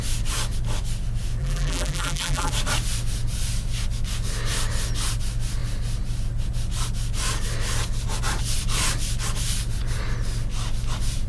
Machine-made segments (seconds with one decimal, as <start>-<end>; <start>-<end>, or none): 1.4-2.5